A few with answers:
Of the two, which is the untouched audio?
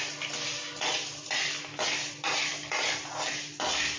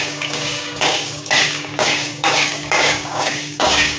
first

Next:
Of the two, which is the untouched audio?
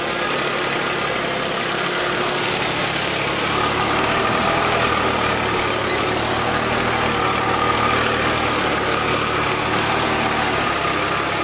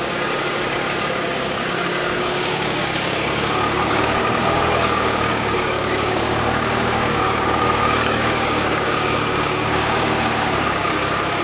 first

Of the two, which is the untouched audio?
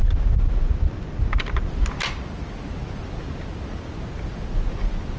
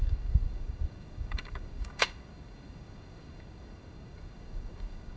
first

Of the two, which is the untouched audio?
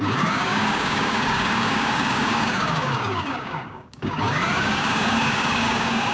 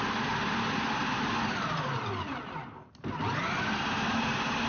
second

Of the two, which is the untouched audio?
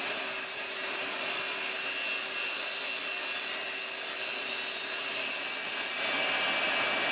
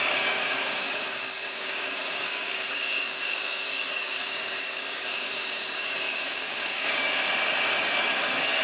first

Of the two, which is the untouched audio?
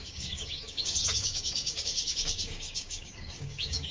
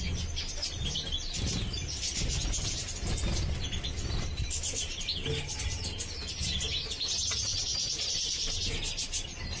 second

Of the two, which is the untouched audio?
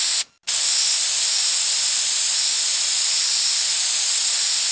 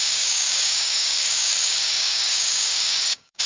first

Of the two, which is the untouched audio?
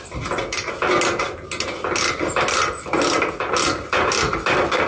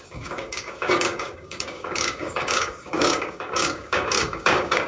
first